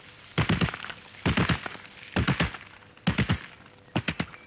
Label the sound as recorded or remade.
recorded